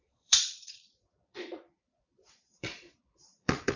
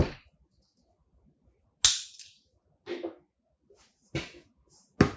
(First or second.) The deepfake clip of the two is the first